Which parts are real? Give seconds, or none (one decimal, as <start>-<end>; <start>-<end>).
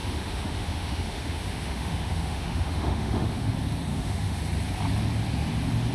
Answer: 3.5-3.9; 4.4-5.9